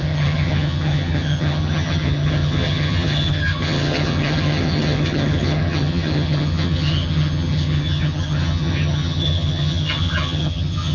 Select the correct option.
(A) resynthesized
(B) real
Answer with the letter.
A